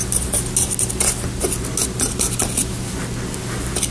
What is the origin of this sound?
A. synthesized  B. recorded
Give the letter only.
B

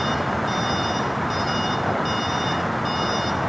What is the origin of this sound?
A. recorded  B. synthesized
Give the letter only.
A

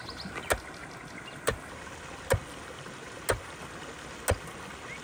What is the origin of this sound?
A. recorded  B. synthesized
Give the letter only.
A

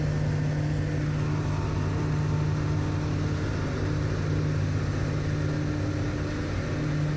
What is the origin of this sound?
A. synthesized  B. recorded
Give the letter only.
B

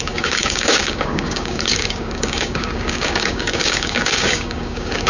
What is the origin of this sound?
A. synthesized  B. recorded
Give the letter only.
A